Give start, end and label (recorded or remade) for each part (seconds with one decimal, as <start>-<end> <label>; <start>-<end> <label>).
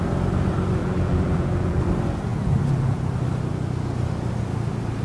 0.0-0.8 recorded; 0.8-1.8 remade; 1.8-2.3 recorded; 2.3-3.0 remade; 3.0-5.0 recorded